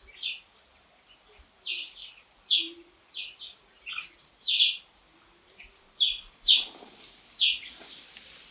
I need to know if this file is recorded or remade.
recorded